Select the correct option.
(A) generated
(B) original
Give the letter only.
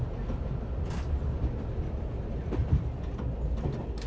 B